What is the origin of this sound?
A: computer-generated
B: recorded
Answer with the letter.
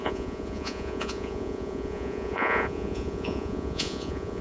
A